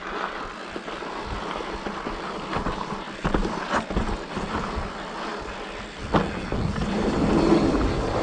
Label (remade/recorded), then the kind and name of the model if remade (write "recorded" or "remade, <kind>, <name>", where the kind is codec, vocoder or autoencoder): recorded